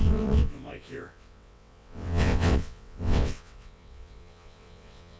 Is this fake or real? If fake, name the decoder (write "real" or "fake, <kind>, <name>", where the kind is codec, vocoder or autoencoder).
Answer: fake, vocoder, WaveNeXt